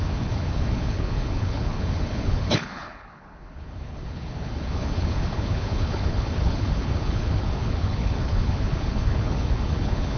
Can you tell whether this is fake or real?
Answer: fake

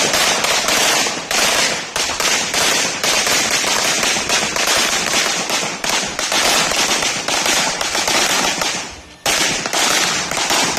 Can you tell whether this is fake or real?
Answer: fake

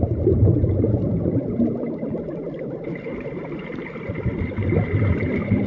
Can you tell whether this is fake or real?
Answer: real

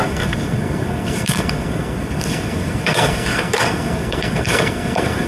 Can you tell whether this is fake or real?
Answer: fake